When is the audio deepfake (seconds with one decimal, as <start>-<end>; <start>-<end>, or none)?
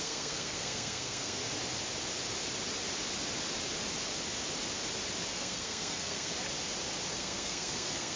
0.0-1.4; 5.3-6.3; 7.1-8.2